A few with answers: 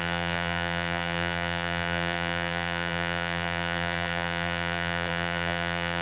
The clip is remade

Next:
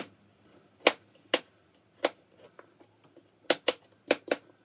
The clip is recorded